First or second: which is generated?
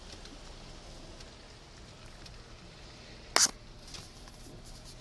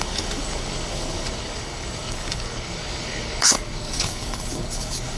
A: second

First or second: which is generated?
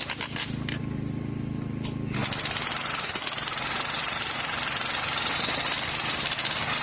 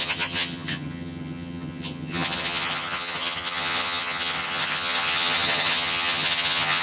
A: second